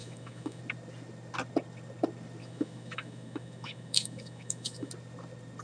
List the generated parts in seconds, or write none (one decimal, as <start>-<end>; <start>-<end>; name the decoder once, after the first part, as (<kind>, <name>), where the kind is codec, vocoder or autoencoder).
0.0-0.6 (autoencoder, DAC-VAE); 2.4-4.9

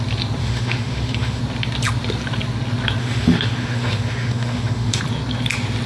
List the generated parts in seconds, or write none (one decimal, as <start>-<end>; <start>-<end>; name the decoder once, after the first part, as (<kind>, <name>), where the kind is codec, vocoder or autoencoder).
0.4-1.4 (autoencoder, DAC-VAE); 3.0-5.0

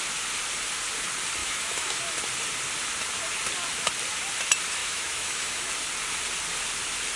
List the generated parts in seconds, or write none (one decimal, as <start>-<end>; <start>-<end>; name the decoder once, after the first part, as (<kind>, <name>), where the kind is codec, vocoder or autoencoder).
1.4-2.0 (autoencoder, DAC-VAE); 4.8-5.7

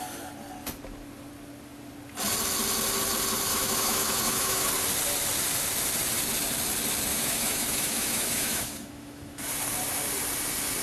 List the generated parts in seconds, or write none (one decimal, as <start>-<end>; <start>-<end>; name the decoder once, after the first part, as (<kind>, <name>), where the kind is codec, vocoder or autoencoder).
3.5-4.7 (autoencoder, DAC-VAE); 7.1-9.5

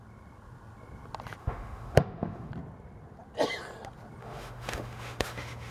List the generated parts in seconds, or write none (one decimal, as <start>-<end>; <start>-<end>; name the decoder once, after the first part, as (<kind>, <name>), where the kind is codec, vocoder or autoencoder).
1.4-2.5 (autoencoder, DAC-VAE); 4.2-5.7

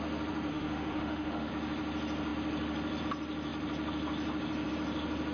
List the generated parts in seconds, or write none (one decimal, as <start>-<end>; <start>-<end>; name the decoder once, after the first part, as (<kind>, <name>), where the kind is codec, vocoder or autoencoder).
0.5-1.5 (autoencoder, DAC-VAE)